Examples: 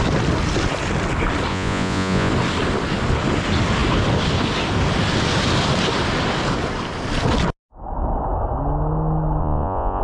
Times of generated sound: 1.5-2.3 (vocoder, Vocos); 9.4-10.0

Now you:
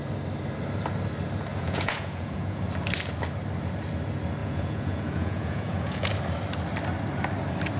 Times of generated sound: 1.5-2.6 (vocoder, Vocos); 4.4-6.1

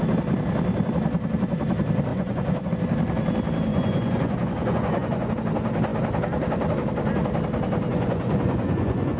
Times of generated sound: 2.1-2.7 (vocoder, Vocos); 3.7-5.3; 7.9-9.2

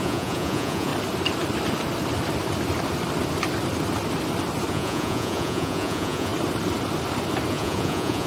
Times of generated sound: 0.0-0.9 (vocoder, Vocos); 4.7-6.3; 7.5-8.3

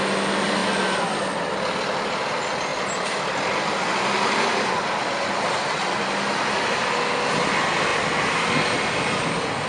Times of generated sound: none

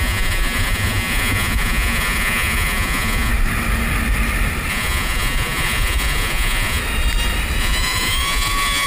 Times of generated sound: 0.0-3.3 (vocoder, Vocos); 4.7-6.8; 7.6-8.9

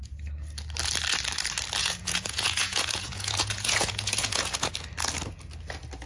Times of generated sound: 1.8-4.7 (vocoder, Vocos)